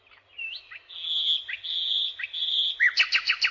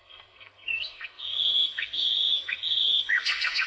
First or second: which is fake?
second